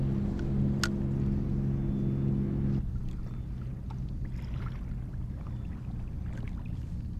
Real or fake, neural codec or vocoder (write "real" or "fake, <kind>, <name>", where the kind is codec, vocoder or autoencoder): real